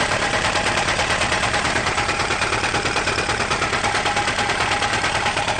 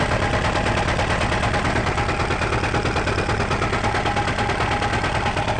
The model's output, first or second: first